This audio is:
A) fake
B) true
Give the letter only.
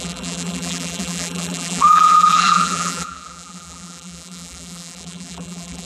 A